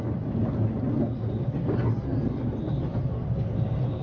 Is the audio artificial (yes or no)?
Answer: no